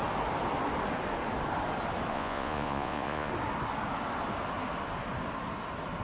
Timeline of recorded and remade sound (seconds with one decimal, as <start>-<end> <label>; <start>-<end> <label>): 0.0-2.1 recorded; 2.1-3.3 remade; 3.3-6.0 recorded